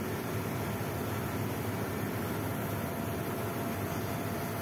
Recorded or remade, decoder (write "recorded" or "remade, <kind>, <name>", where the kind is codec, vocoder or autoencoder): recorded